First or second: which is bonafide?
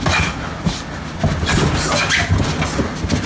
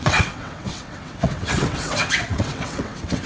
first